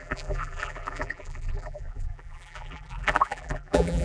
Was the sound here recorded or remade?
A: remade